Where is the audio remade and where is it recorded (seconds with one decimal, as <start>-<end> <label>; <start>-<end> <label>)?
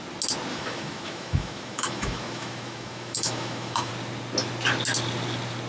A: 0.0-0.5 recorded; 0.5-3.9 remade; 3.9-5.7 recorded